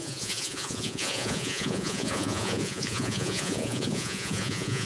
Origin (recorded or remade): remade